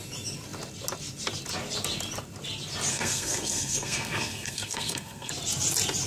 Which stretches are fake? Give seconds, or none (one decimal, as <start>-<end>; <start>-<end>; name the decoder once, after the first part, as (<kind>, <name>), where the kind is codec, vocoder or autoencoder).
2.9-5.3 (codec, SNAC)